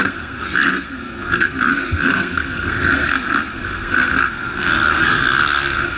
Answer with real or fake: fake